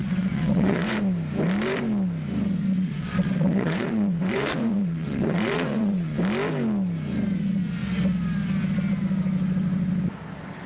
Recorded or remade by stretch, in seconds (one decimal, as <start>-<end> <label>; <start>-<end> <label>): 0.0-0.9 remade; 0.9-2.7 recorded; 2.7-6.2 remade; 6.2-10.7 recorded